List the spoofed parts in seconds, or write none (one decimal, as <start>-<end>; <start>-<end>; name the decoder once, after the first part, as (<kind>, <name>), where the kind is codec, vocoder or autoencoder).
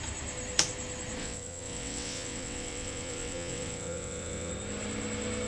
1.2-4.5 (vocoder, WaveNeXt)